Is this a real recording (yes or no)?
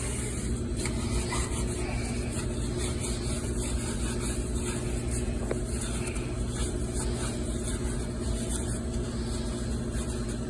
yes